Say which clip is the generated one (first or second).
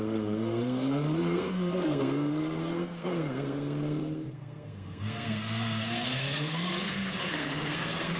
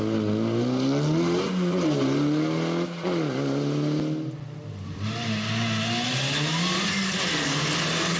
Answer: first